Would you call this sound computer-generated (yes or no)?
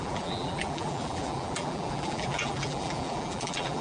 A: yes